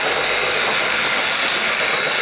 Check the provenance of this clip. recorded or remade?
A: recorded